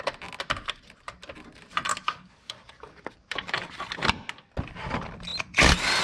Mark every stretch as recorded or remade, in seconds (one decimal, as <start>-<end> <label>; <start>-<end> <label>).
0.0-1.9 recorded; 1.9-3.7 remade; 3.7-6.0 recorded